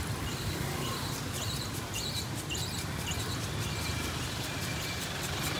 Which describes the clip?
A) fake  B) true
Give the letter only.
A